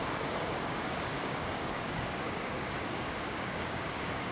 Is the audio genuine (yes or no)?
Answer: no